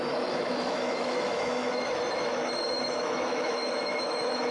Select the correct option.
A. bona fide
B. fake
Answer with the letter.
B